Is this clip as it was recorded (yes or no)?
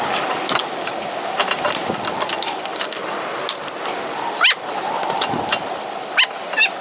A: yes